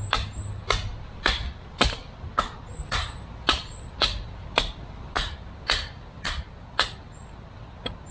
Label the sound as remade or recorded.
recorded